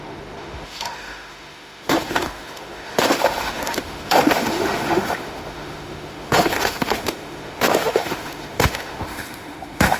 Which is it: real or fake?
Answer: fake